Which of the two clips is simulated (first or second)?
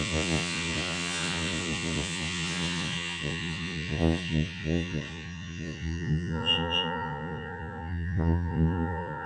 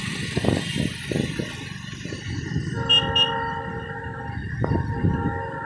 first